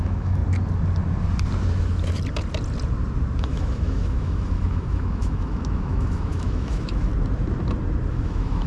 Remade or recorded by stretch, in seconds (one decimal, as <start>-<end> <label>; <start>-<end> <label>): 0.0-0.4 remade; 0.4-3.4 recorded; 3.4-7.1 remade; 7.1-8.1 recorded; 8.1-8.7 remade

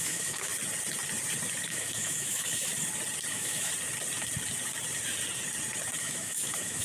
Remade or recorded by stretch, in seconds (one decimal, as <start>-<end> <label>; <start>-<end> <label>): 0.0-0.5 remade; 0.5-1.7 recorded; 1.7-2.7 remade; 2.7-3.3 recorded; 3.3-3.7 remade; 3.7-6.0 recorded; 6.0-6.8 remade

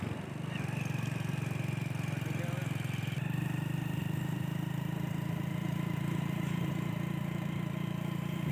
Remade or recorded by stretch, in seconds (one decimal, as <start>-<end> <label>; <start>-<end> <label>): 0.0-8.5 recorded

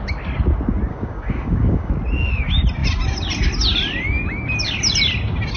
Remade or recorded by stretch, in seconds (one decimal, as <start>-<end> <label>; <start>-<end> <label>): 0.0-0.9 recorded; 0.9-1.9 remade; 1.9-5.6 recorded

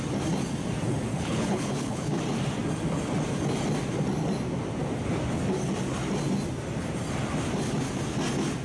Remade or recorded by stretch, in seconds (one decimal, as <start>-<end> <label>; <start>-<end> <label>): 0.0-1.1 recorded; 1.1-2.2 remade; 2.2-8.6 recorded